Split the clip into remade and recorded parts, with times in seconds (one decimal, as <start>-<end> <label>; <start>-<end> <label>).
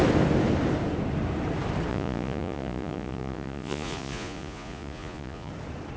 0.0-1.9 recorded; 1.9-5.5 remade; 5.5-6.0 recorded